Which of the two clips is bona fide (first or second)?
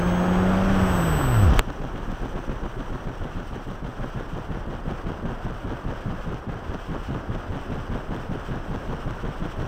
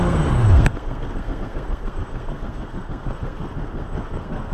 first